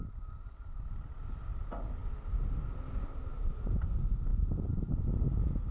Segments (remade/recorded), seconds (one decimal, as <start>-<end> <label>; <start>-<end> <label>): 0.0-5.7 recorded